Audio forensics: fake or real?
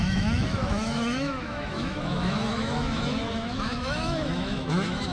fake